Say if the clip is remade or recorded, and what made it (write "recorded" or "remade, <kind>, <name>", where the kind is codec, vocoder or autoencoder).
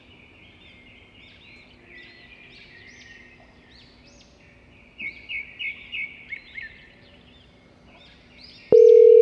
recorded